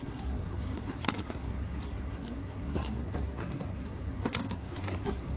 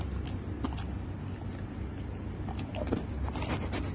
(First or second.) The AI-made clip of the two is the first